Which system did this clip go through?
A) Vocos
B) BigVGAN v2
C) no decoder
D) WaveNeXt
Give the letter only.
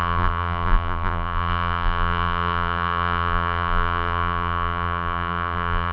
B